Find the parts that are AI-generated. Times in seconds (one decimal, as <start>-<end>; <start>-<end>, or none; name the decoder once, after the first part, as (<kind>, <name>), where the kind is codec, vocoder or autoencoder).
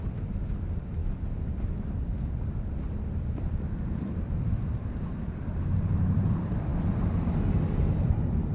none